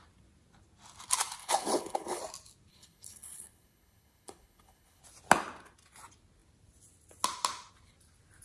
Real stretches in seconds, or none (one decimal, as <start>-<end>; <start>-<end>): 0.0-1.4; 2.2-2.7; 5.0-8.4